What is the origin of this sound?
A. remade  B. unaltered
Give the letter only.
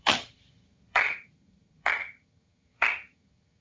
A